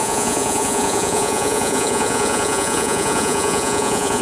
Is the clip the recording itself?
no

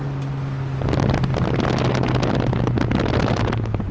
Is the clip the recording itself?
yes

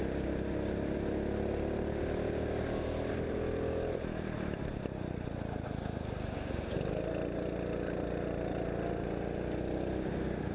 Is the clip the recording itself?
yes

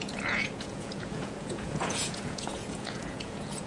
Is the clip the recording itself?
no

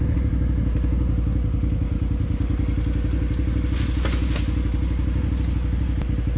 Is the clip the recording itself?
yes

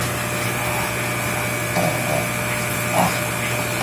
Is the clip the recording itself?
yes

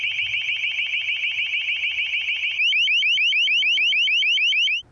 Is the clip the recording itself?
yes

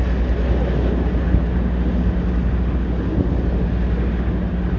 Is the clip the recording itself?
yes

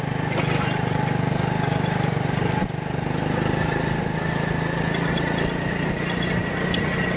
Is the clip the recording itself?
yes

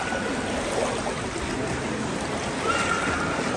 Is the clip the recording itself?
yes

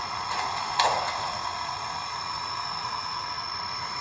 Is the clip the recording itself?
no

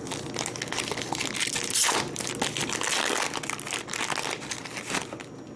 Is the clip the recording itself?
yes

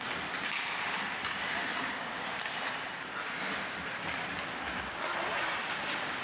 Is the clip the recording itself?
yes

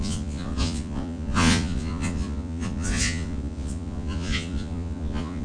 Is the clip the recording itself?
no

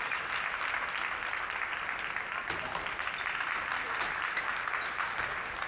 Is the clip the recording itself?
yes